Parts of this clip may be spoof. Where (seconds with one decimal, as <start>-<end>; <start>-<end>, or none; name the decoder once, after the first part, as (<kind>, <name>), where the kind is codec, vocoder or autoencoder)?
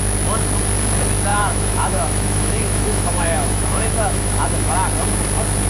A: 1.3-4.7 (autoencoder, DAC-VAE)